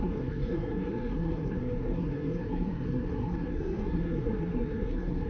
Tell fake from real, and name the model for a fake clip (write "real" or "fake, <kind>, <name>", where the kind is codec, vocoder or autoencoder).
fake, codec, SNAC